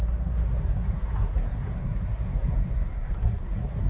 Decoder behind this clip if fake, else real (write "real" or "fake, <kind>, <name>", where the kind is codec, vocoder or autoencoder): fake, codec, SNAC